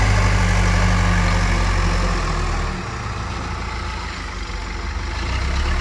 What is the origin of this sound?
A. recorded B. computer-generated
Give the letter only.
A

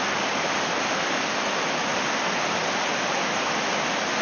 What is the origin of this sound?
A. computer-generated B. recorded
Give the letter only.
B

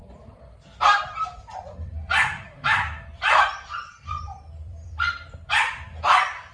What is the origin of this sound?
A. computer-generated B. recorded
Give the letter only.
A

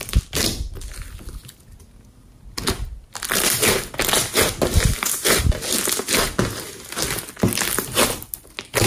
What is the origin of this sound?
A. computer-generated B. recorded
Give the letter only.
B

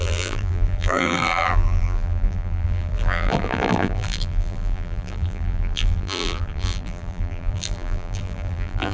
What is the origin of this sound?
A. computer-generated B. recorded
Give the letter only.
A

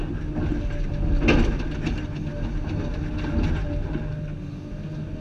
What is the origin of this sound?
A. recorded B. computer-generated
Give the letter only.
A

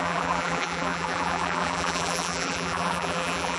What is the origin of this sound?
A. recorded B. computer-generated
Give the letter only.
B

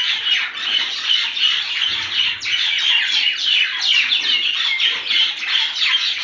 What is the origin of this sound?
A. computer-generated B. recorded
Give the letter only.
B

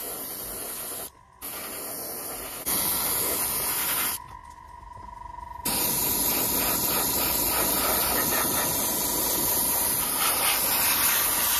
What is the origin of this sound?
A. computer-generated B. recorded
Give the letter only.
B